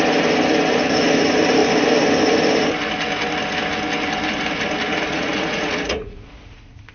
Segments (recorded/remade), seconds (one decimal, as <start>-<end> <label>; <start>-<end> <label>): 0.0-4.9 recorded; 4.9-6.9 remade